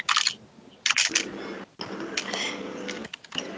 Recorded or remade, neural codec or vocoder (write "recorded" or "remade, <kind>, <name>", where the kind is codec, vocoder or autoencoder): recorded